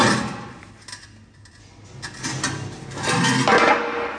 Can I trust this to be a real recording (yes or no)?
yes